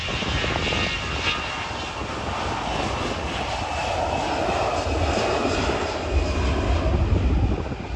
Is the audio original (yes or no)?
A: yes